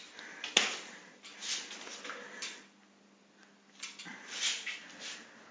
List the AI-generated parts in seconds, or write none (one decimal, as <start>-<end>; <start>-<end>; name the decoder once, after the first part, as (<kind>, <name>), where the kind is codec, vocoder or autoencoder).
none

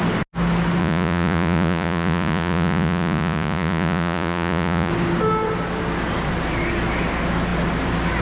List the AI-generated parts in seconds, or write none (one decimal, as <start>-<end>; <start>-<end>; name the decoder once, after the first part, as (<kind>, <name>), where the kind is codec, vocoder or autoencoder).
0.8-4.9 (vocoder, Vocos)